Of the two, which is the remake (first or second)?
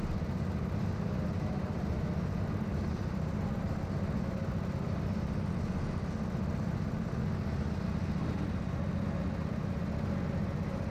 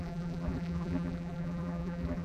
second